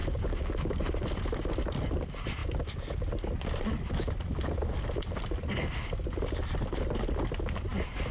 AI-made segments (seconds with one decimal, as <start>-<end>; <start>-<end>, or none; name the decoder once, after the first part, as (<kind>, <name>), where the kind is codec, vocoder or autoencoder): 0.0-0.8 (codec, DAC)